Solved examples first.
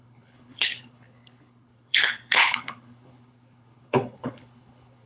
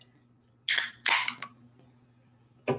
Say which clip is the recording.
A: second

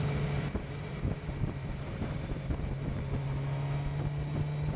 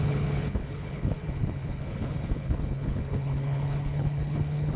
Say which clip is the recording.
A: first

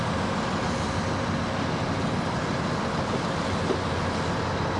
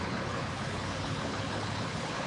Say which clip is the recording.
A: first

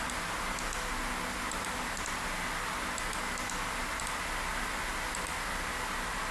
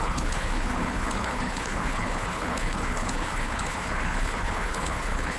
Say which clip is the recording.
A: first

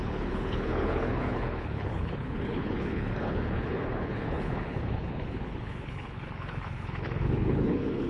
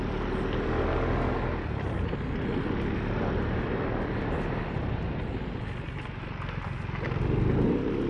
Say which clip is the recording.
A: second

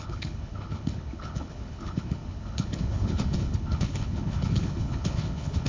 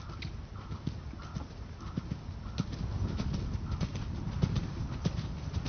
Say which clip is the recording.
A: second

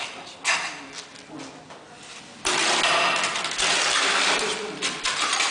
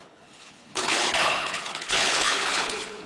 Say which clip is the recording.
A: first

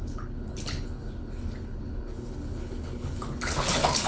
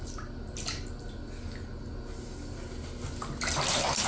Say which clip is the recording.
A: second